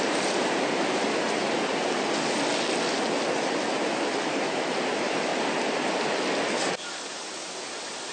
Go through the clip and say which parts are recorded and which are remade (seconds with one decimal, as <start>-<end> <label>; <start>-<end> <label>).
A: 0.0-1.4 remade; 1.4-4.1 recorded; 4.1-5.3 remade; 5.3-8.1 recorded